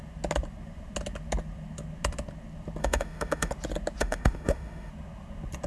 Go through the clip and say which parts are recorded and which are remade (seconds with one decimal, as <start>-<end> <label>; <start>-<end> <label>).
0.0-2.8 recorded; 2.8-3.5 remade; 3.5-4.0 recorded; 4.0-4.9 remade; 4.9-5.7 recorded